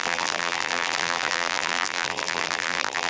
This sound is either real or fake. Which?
fake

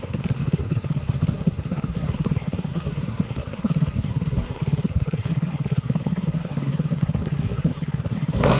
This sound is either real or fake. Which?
fake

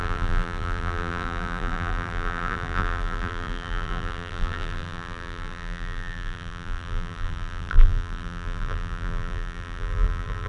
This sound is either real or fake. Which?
fake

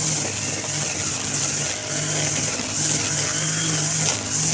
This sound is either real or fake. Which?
real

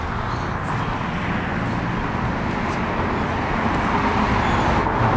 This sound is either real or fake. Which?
real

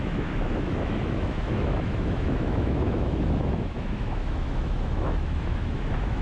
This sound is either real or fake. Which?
fake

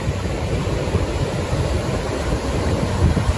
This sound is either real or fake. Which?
fake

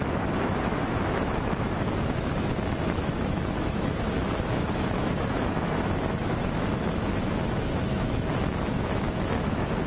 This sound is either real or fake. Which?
fake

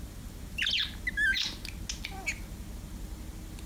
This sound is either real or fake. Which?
real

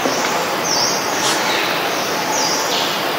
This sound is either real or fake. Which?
real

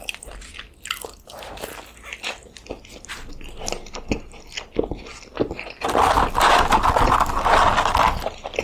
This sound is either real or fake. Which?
real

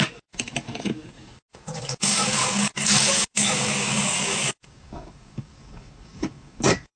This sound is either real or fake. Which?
fake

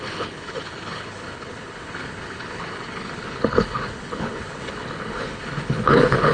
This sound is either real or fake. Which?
fake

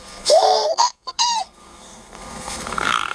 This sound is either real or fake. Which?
fake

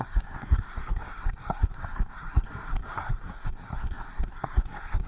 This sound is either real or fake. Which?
fake